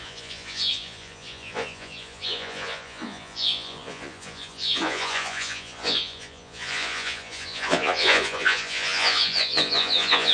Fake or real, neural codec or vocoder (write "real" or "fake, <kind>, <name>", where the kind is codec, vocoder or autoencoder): fake, vocoder, Vocos